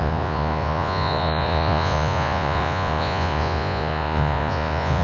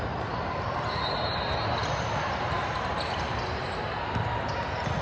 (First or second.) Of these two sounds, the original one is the second